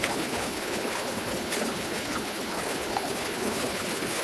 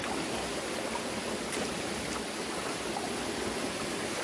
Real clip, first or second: second